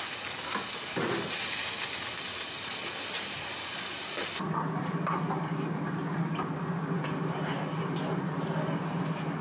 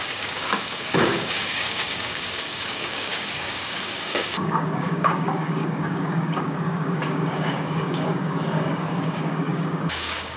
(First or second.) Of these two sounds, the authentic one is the first